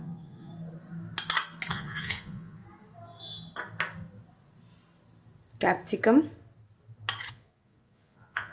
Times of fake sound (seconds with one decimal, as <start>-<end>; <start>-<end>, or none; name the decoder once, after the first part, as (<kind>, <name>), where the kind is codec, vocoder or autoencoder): 0.0-0.5 (vocoder, Vocos); 1.7-2.6; 7.3-8.5